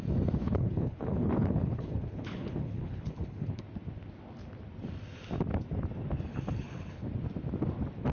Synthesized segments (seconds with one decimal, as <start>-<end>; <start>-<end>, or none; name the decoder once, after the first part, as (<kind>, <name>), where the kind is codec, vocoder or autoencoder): 0.4-3.6 (codec, HILCodec); 6.3-7.1

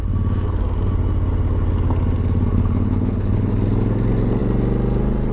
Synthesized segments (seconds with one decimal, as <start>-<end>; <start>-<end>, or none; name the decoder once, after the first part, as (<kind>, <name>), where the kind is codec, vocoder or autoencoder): 2.5-3.5 (codec, HILCodec)

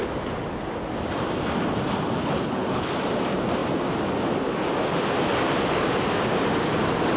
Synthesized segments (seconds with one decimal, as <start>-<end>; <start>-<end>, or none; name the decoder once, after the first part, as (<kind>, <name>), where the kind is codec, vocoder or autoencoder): 2.2-2.9 (codec, HILCodec)

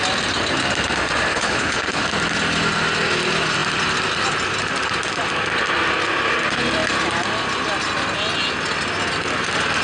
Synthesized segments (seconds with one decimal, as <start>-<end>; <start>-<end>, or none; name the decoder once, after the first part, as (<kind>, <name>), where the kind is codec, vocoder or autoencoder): 1.3-2.0 (codec, HILCodec)

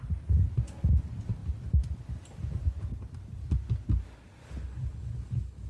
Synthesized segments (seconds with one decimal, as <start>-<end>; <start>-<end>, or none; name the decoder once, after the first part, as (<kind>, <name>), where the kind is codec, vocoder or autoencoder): 4.4-5.7 (codec, HILCodec)

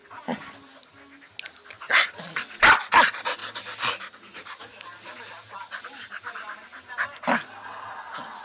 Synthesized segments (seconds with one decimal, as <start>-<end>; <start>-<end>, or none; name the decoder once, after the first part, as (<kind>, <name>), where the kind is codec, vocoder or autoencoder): none